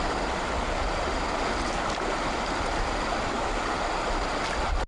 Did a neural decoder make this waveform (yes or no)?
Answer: no